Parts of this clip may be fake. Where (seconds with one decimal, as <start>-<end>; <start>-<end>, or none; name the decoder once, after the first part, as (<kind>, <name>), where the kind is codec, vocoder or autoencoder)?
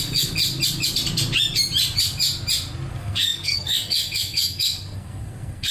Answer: 0.0-0.4 (codec, SNAC); 2.9-5.7